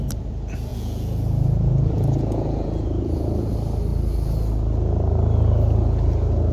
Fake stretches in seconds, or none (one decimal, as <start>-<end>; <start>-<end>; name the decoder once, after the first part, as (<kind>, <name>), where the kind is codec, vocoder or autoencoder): 0.7-3.5 (vocoder, Vocos)